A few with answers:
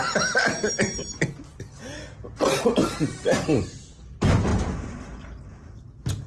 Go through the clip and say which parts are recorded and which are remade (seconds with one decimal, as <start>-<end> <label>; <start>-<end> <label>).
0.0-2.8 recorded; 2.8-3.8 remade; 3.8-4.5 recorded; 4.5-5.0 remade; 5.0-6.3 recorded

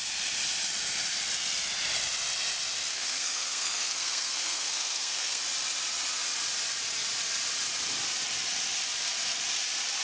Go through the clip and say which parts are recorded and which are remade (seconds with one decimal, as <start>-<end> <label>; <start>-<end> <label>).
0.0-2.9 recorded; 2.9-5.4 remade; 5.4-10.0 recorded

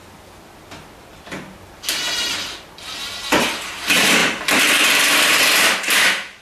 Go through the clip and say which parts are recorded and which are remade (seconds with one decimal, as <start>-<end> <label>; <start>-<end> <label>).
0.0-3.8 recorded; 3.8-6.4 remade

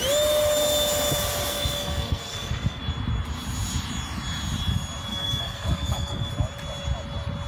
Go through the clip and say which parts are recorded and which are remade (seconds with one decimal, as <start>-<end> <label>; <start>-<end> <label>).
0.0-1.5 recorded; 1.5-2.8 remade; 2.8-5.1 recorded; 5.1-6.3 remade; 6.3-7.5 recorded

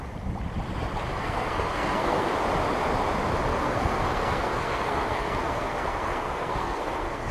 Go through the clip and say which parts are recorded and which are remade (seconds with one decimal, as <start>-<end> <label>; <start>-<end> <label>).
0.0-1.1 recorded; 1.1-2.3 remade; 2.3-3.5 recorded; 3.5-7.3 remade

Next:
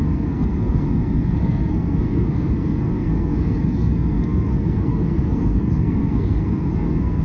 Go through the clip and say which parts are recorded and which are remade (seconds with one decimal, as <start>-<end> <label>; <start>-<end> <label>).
0.0-7.2 remade

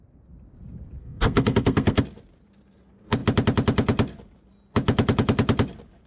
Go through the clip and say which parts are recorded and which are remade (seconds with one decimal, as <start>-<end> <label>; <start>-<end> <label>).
0.0-1.0 recorded; 1.0-2.0 remade; 2.0-6.1 recorded

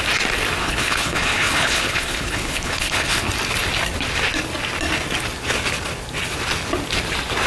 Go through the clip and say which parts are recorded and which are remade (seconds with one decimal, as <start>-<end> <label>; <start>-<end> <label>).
0.0-0.6 recorded; 0.6-3.3 remade; 3.3-7.5 recorded